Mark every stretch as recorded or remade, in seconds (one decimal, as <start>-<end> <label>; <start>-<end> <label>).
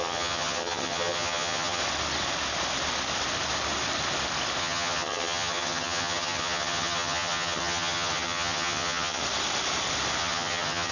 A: 0.0-1.8 remade; 1.8-4.6 recorded; 4.6-9.2 remade; 9.2-10.2 recorded; 10.2-10.9 remade